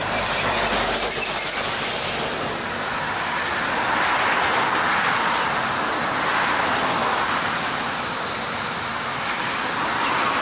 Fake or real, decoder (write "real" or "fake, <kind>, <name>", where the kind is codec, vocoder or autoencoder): real